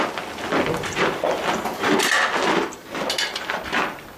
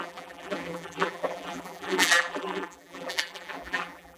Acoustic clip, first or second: first